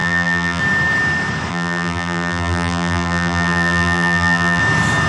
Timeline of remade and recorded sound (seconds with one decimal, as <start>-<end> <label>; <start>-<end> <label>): 0.0-0.6 remade; 0.6-1.5 recorded; 1.5-4.6 remade; 4.6-5.1 recorded